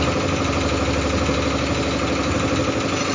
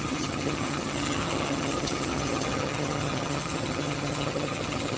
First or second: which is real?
first